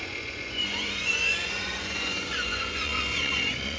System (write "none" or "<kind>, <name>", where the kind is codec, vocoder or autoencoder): vocoder, Vocos